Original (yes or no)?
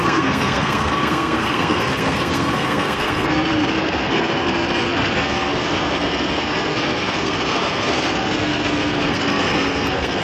no